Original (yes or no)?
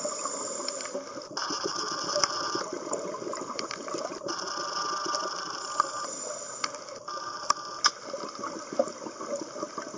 yes